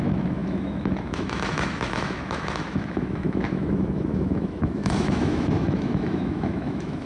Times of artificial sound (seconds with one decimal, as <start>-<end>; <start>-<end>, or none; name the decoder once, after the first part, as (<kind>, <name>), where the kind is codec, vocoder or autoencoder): 0.0-7.1 (autoencoder, DAC-VAE)